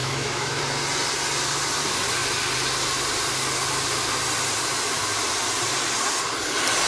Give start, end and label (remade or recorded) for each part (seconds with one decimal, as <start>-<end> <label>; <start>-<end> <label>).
0.0-0.6 remade; 0.6-6.9 recorded